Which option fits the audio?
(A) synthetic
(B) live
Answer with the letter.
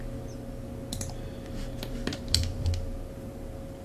A